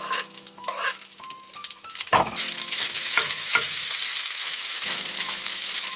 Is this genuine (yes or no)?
no